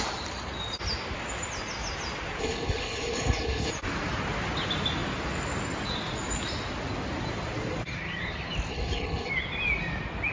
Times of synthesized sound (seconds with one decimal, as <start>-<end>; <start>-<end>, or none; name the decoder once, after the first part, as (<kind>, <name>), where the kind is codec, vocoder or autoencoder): 2.4-3.7 (codec, HILCodec); 8.7-9.3